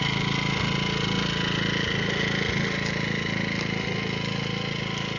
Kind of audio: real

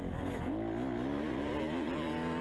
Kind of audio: real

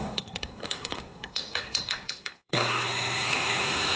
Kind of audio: fake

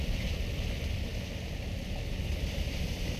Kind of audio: real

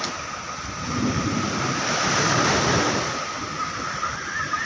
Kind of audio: real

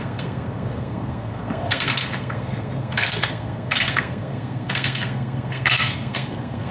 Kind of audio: fake